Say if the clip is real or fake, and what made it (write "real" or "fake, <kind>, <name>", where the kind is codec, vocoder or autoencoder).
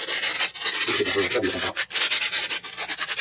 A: real